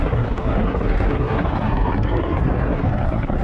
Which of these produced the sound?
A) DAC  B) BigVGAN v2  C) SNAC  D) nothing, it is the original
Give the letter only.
C